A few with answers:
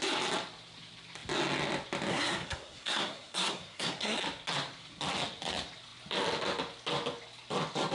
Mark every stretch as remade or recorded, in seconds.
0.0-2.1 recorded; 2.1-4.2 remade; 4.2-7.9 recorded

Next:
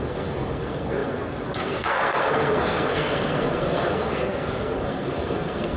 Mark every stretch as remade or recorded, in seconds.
0.0-5.8 remade

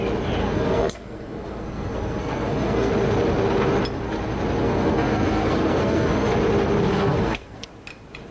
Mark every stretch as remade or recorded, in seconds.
0.0-0.4 recorded; 0.4-2.9 remade; 2.9-4.6 recorded; 4.6-6.3 remade; 6.3-6.9 recorded; 6.9-7.7 remade; 7.7-8.3 recorded

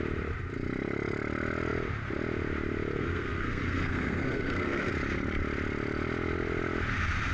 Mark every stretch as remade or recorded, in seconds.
0.0-3.0 recorded; 3.0-4.9 remade; 4.9-7.3 recorded

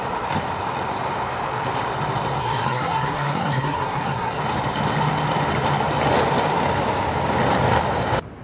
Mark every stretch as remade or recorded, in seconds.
0.0-2.4 recorded; 2.4-4.4 remade; 4.4-8.4 recorded

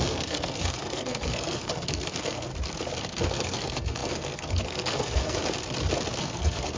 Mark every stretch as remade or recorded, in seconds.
0.0-2.5 remade; 2.5-3.0 recorded; 3.0-5.4 remade; 5.4-6.2 recorded; 6.2-6.8 remade